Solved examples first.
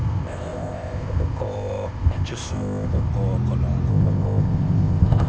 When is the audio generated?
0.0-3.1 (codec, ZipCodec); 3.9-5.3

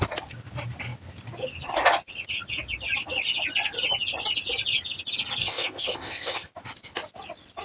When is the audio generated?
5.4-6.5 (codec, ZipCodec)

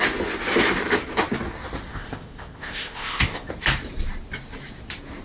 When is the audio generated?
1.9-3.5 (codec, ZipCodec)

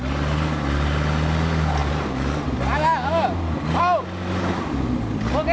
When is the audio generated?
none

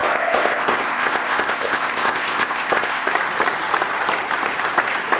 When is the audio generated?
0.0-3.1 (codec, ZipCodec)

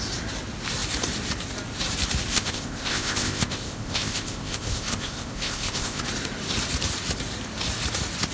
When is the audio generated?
2.3-6.0 (codec, ZipCodec)

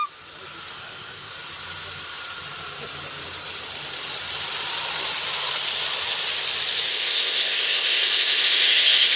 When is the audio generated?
0.7-1.3 (codec, ZipCodec); 6.9-9.2

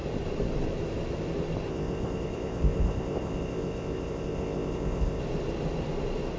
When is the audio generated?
1.7-5.2 (codec, ZipCodec)